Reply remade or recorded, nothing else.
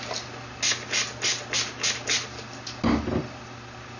recorded